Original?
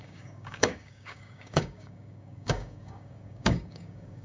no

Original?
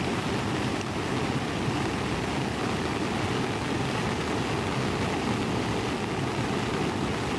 yes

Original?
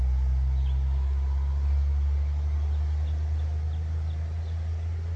yes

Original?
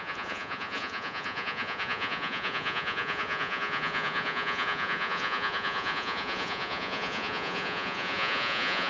no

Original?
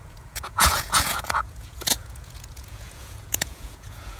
no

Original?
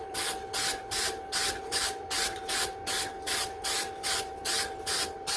no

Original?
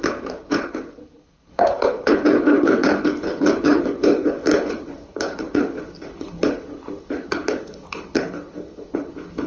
no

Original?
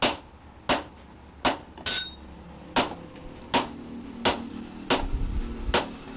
yes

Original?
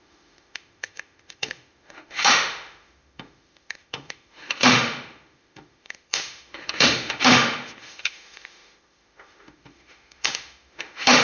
no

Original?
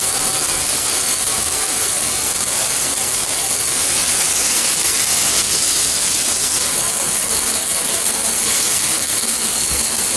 no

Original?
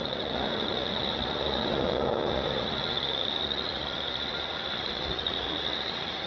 no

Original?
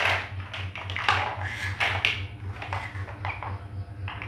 yes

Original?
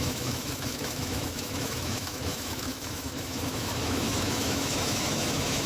no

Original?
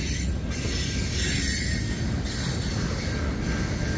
yes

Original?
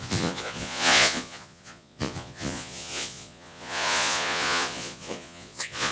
no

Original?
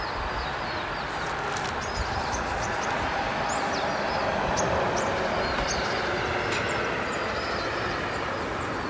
yes